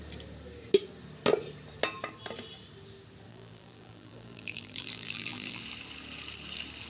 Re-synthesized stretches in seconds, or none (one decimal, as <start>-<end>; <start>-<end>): 3.3-5.6